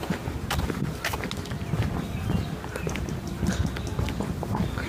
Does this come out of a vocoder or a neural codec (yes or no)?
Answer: no